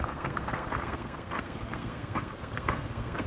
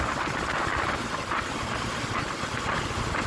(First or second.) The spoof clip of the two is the first